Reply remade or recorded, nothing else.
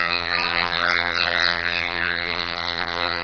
remade